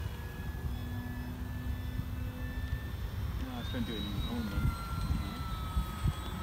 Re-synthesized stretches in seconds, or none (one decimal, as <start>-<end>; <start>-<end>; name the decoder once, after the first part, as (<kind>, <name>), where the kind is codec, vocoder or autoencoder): none